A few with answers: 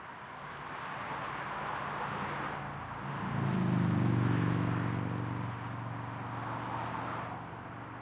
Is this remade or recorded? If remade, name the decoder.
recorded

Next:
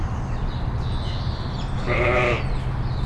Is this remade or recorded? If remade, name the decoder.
recorded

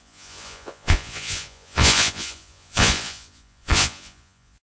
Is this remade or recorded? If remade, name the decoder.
remade, vocoder, Vocos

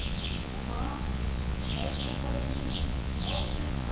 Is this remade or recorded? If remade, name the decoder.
remade, vocoder, Vocos